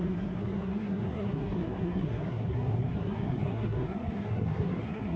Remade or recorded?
remade